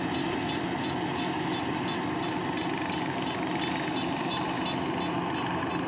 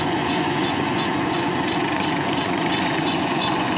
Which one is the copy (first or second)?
second